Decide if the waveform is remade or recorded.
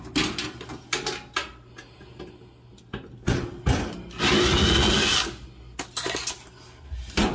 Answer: recorded